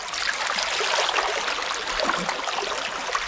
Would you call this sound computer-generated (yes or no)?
no